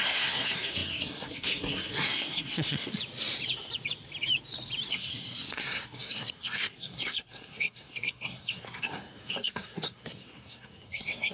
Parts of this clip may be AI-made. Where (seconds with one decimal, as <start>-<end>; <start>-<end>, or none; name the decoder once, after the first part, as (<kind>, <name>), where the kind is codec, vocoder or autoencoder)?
0.0-2.9 (codec, SNAC); 4.9-11.3